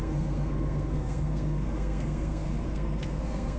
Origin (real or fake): fake